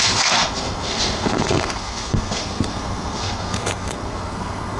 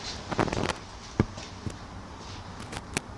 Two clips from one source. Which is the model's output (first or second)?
first